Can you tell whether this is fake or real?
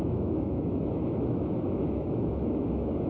fake